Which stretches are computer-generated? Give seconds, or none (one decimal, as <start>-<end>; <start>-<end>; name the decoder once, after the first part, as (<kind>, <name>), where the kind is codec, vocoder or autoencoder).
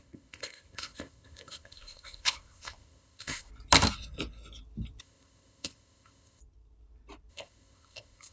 0.0-3.5 (codec, ZipCodec); 5.0-6.4; 7.3-8.3